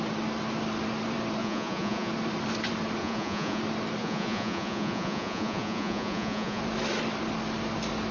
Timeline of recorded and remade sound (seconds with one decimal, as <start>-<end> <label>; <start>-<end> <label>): 0.0-1.4 recorded; 1.4-2.1 remade; 2.1-3.0 recorded; 3.0-3.6 remade; 3.6-4.0 recorded; 4.0-6.6 remade; 6.6-8.1 recorded